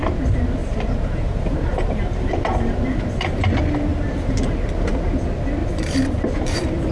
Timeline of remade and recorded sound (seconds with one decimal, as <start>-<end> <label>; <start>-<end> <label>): 0.0-0.6 recorded; 0.6-3.4 remade; 3.4-3.9 recorded; 3.9-4.5 remade; 4.5-5.6 recorded; 5.6-6.9 remade